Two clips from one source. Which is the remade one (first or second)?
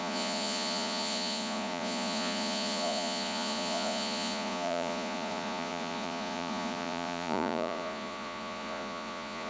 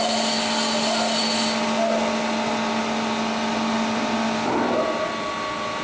first